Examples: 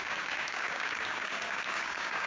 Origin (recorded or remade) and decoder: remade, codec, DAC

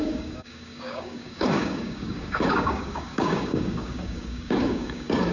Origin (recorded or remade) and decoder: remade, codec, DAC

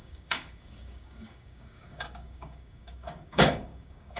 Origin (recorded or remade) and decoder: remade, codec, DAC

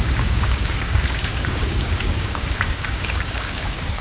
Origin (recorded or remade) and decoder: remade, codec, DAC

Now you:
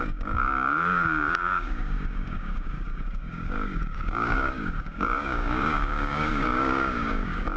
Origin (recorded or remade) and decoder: remade, codec, DAC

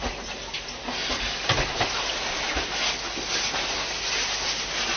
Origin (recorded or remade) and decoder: recorded